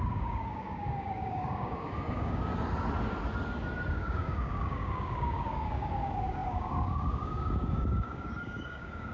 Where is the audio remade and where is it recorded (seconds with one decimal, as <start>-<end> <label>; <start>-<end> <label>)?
0.0-2.5 remade; 2.5-3.9 recorded; 3.9-9.1 remade